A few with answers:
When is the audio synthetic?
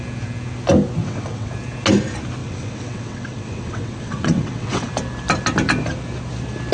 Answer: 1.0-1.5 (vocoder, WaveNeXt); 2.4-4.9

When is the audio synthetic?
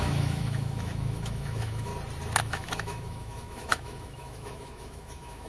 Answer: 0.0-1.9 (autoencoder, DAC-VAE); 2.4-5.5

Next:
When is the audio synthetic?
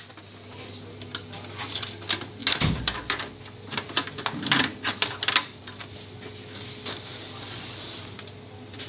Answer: none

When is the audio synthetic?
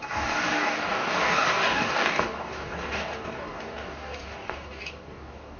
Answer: 0.0-5.6 (codec, DAC)